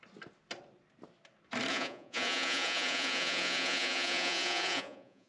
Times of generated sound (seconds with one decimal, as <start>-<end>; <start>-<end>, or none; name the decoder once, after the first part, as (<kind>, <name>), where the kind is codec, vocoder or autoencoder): 1.7-5.3 (vocoder, Vocos)